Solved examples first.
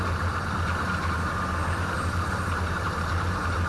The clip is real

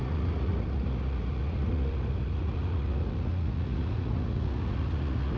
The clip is fake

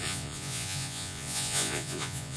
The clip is fake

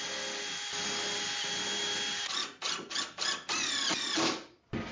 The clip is real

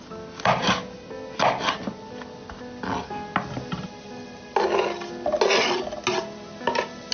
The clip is real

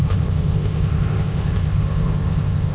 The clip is fake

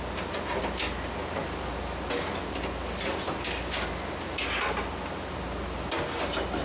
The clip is real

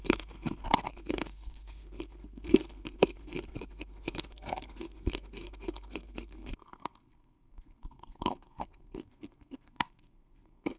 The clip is fake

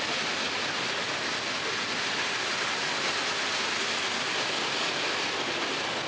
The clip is real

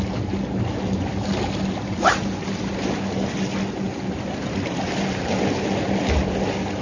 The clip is real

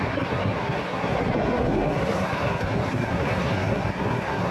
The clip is fake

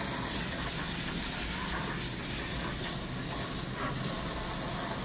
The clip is real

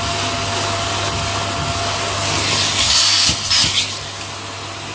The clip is real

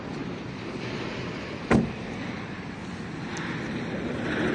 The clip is real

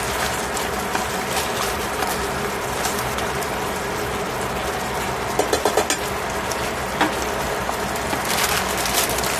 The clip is real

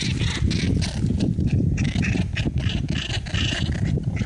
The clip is real